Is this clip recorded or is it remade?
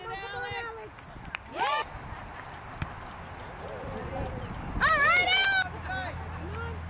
recorded